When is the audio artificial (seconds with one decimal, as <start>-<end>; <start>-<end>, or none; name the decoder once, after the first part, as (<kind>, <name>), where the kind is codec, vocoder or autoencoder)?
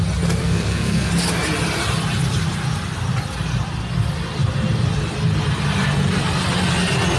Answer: 0.4-1.1 (codec, SNAC)